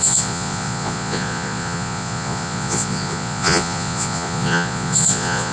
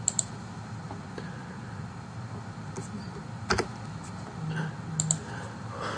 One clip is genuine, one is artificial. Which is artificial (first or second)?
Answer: first